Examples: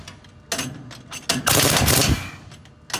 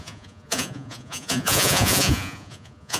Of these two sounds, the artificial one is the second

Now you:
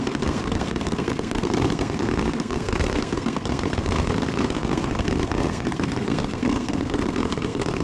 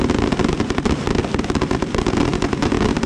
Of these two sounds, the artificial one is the first